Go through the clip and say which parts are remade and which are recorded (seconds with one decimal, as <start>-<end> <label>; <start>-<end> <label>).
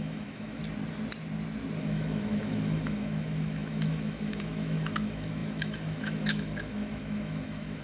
0.0-0.6 remade; 0.6-1.8 recorded; 1.8-7.8 remade